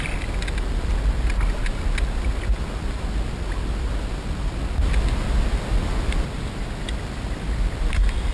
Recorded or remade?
recorded